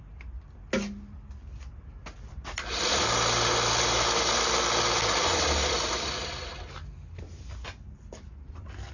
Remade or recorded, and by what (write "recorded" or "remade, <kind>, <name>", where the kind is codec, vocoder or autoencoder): recorded